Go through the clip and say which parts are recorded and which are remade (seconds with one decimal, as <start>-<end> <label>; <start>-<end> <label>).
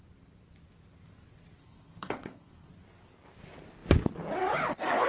0.0-1.6 recorded; 1.6-2.7 remade; 2.7-5.1 recorded